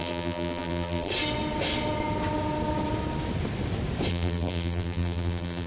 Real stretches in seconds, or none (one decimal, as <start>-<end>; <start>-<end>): 1.1-4.1